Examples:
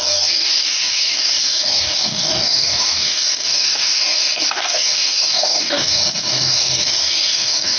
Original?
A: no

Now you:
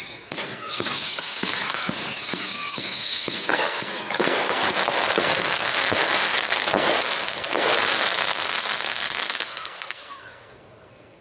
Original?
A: no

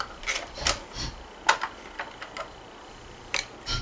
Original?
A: yes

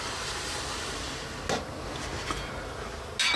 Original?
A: yes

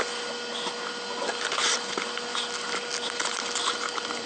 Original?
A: yes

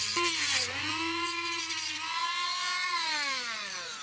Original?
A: no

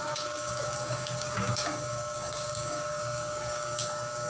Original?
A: no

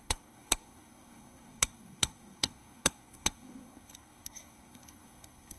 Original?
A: no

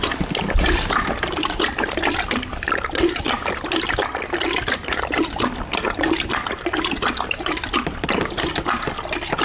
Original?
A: yes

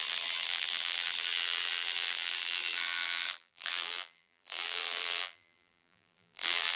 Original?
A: no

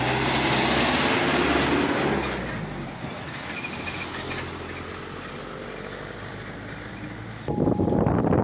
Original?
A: yes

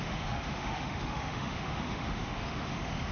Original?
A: no